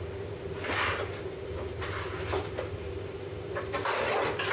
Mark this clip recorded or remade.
recorded